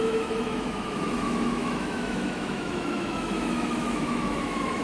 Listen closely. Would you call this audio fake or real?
fake